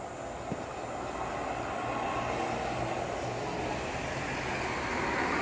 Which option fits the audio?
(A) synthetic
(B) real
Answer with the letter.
B